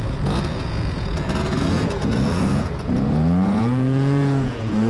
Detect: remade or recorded remade